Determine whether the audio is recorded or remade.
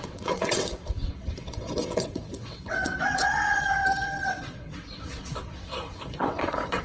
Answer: remade